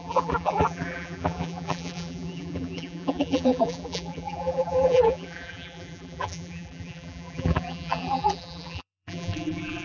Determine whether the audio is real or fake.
fake